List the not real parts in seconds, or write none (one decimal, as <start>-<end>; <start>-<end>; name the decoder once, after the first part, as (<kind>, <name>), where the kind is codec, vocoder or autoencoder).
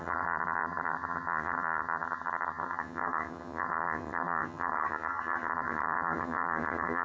0.0-7.0 (vocoder, HiFi-GAN)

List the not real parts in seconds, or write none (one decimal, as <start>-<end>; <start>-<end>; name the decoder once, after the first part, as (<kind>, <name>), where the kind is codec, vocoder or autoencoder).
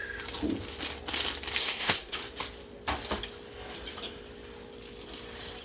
1.6-2.2 (codec, SNAC)